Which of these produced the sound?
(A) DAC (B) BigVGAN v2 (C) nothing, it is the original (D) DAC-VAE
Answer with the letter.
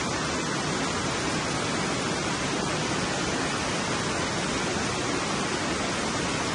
C